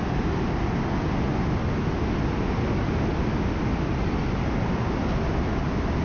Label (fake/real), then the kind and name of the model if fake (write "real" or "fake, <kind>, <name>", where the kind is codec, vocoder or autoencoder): real